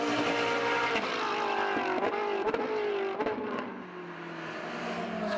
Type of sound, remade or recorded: recorded